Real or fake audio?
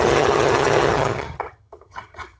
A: fake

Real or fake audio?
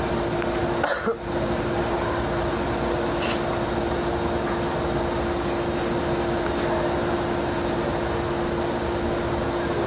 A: real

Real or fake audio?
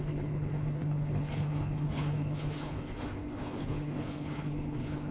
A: fake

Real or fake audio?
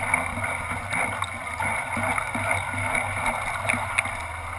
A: real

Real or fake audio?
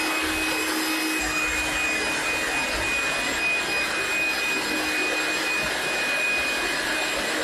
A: real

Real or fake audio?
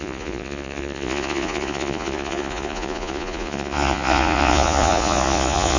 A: fake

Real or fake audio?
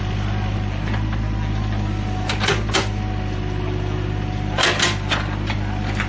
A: real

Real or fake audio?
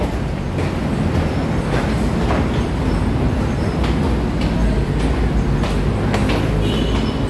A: real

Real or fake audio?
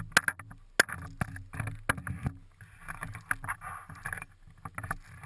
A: real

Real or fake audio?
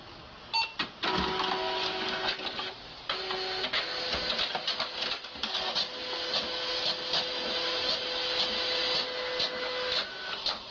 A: real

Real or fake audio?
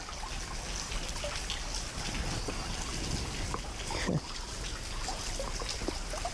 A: real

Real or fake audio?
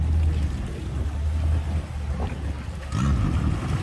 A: real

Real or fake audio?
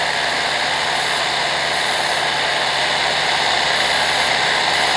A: real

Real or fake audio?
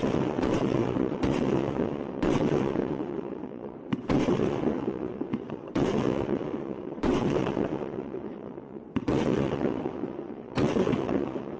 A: fake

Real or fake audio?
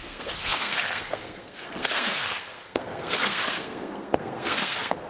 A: fake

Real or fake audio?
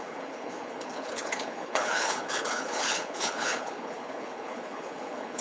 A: fake